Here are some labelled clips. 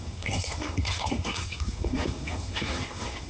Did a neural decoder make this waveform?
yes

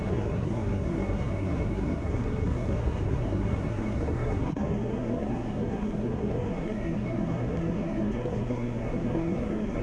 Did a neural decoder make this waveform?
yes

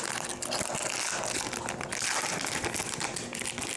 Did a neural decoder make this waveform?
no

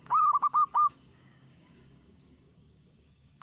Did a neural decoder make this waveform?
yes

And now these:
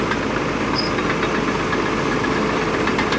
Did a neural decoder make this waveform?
no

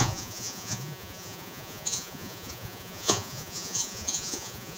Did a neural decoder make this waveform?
yes